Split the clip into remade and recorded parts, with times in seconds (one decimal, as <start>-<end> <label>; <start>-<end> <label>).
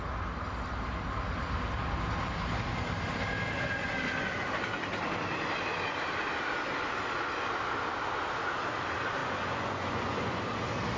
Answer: 0.0-9.2 recorded; 9.2-10.4 remade; 10.4-11.0 recorded